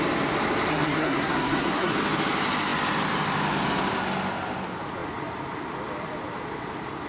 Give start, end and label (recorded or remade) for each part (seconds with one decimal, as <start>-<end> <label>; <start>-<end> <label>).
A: 0.0-0.7 recorded; 0.7-1.9 remade; 1.9-7.1 recorded